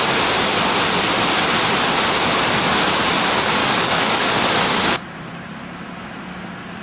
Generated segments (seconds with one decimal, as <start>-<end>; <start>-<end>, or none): 3.6-4.4